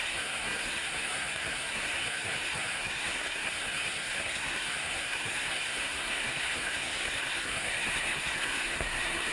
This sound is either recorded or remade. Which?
remade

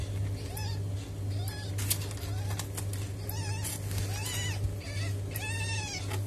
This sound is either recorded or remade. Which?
recorded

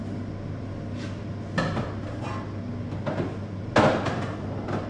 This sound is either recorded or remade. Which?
recorded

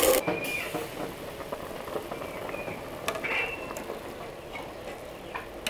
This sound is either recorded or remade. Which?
recorded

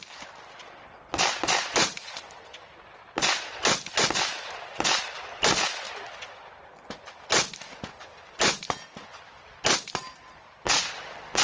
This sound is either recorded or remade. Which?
recorded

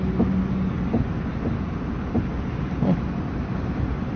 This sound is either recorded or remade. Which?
remade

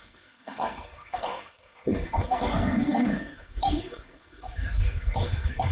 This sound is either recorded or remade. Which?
remade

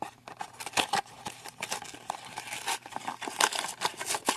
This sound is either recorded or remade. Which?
recorded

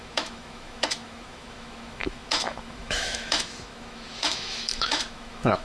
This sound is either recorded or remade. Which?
remade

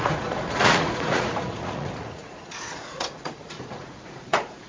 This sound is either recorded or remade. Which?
remade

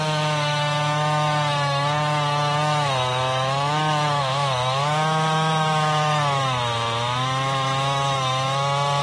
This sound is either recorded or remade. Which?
remade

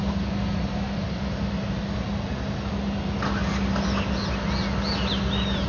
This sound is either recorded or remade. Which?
recorded